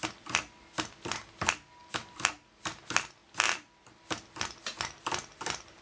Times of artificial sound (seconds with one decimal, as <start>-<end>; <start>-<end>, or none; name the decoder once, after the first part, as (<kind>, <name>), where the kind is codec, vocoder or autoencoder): none